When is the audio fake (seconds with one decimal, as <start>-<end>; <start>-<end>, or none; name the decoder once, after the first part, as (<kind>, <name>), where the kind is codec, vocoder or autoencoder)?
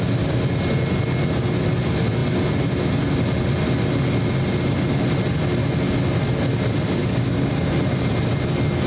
7.0-7.5 (codec, DAC)